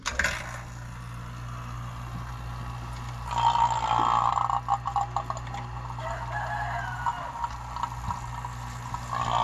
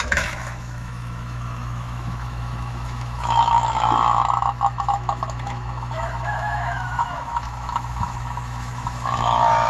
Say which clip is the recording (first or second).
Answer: first